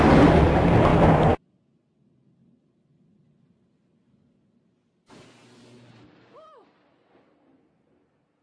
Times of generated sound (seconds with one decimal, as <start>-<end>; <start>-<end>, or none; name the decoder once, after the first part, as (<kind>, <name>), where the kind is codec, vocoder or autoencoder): none